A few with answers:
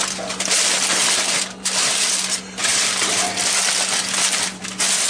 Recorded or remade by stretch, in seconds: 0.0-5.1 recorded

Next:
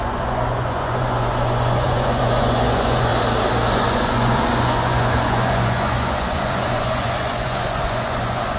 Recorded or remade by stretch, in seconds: 0.0-3.1 remade; 3.1-3.7 recorded; 3.7-8.6 remade

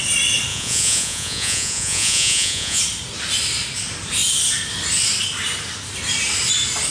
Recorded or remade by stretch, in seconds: 0.0-0.5 recorded; 0.5-2.8 remade; 2.8-6.9 recorded